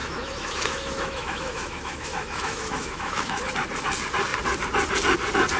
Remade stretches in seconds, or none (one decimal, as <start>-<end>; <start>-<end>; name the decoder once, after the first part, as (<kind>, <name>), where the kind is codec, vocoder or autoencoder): 0.0-3.4 (autoencoder, DAC-VAE)